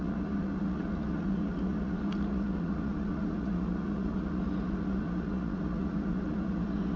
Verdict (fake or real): fake